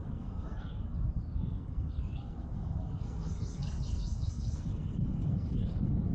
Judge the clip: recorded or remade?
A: remade